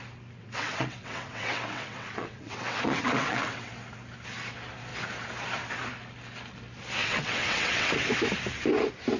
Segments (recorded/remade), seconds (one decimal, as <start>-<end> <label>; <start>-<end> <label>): 0.0-0.4 recorded; 0.4-3.7 remade; 3.7-7.0 recorded; 7.0-7.9 remade; 7.9-9.2 recorded